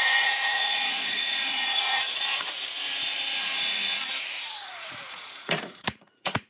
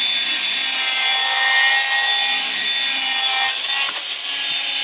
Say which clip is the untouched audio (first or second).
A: second